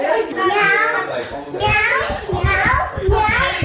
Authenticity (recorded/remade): remade